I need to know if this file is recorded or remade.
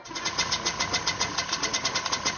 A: remade